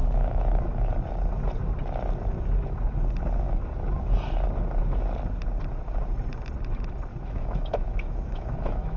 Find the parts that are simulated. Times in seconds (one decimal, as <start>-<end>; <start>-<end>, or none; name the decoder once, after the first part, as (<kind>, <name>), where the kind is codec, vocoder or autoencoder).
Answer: 0.0-0.9 (autoencoder, DAC-VAE); 7.1-9.0